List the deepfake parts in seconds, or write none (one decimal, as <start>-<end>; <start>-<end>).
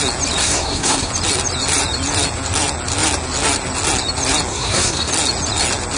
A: 0.4-1.1; 4.5-5.1